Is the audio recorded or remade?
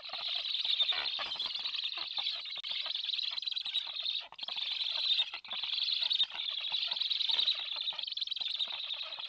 recorded